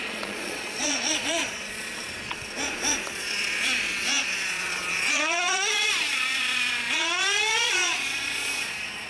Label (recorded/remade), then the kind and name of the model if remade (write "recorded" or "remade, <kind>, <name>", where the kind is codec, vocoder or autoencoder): remade, vocoder, Vocos